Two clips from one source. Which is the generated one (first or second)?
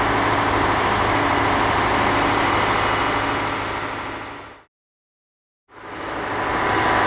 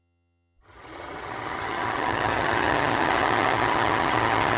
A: second